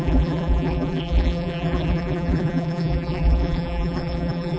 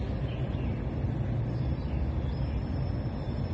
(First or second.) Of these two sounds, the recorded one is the second